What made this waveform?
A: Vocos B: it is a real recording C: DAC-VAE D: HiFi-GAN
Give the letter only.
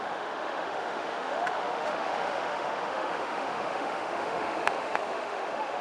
C